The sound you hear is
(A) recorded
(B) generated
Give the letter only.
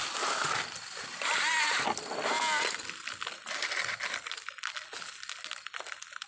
A